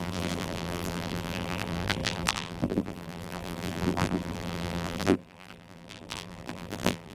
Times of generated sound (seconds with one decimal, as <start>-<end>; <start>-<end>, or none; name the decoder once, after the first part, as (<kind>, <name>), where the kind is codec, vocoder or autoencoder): 0.0-7.1 (vocoder, BigVGAN v2)